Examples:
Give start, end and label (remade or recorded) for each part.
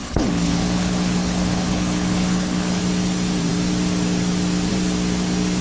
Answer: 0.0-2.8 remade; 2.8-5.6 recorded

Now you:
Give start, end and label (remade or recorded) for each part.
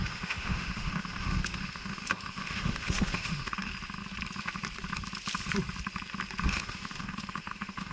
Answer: 0.0-3.7 remade; 3.7-6.5 recorded; 6.5-7.9 remade